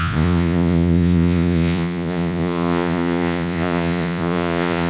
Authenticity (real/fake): fake